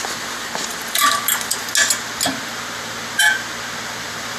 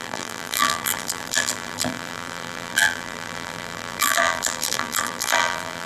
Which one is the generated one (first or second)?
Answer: second